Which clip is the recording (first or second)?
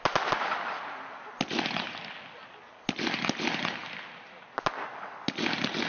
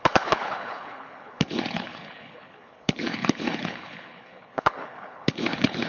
first